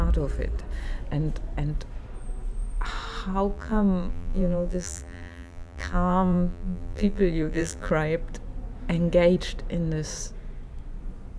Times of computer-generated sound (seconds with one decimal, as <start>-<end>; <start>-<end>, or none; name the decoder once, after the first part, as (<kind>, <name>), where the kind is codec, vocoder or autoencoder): 3.5-7.9 (vocoder, BigVGAN v2)